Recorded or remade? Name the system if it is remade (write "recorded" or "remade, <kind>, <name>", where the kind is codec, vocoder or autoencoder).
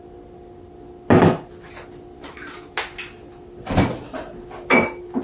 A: recorded